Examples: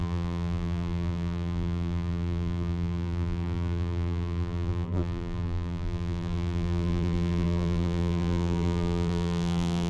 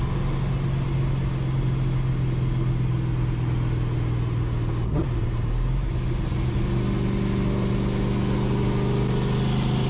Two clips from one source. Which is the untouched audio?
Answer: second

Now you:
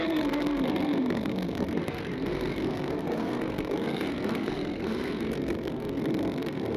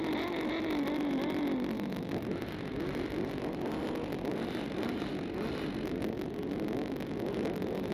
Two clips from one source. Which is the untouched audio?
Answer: second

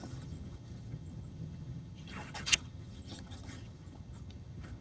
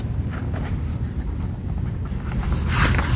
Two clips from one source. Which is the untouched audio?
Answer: second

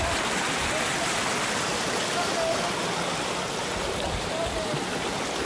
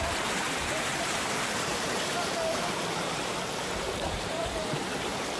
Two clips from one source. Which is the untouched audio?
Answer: first